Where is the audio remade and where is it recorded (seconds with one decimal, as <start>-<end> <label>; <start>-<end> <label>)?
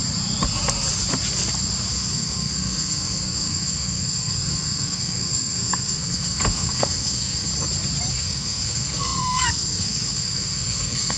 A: 0.0-1.9 recorded; 1.9-7.5 remade; 7.5-8.1 recorded; 8.1-11.2 remade